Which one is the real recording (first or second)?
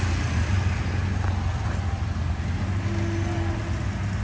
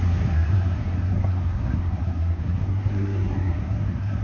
first